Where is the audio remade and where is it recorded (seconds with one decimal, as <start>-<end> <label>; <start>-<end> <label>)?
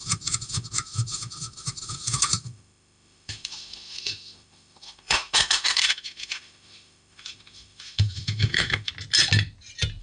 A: 0.0-8.9 remade; 8.9-10.0 recorded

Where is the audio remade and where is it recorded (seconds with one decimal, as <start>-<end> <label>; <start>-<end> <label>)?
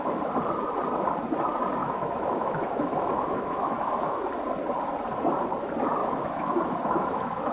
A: 0.0-1.8 recorded; 1.8-4.2 remade; 4.2-6.0 recorded; 6.0-7.5 remade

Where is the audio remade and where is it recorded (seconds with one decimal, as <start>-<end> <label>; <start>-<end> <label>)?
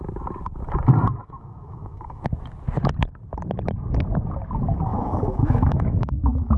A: 0.0-1.2 recorded; 1.2-2.2 remade; 2.2-4.9 recorded; 4.9-6.6 remade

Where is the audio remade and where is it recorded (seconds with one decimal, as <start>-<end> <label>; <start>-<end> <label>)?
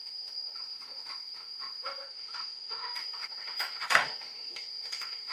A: 0.0-5.3 remade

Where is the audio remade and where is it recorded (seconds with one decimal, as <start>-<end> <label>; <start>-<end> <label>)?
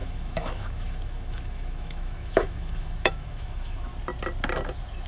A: 0.0-3.9 remade; 3.9-5.1 recorded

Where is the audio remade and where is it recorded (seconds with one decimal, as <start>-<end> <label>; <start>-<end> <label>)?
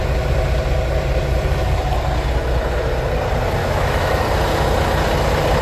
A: 0.0-3.6 recorded; 3.6-4.1 remade; 4.1-5.6 recorded